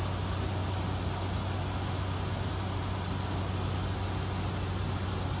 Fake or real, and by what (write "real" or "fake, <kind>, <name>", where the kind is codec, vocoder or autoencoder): real